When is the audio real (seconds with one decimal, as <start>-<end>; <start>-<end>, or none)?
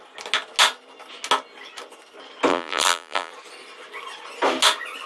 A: 0.0-2.5; 3.3-5.1